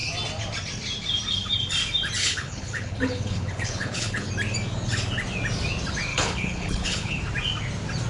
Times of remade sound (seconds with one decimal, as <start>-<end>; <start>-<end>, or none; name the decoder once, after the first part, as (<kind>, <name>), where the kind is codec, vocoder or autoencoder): 2.2-4.3 (codec, HILCodec); 6.1-7.2